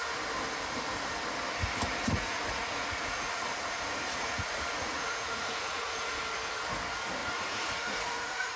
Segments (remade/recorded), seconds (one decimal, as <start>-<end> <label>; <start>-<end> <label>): 0.0-2.0 recorded; 2.0-6.2 remade; 6.2-7.2 recorded; 7.2-8.6 remade